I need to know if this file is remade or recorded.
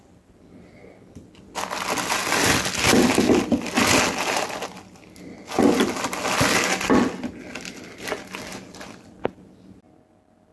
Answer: recorded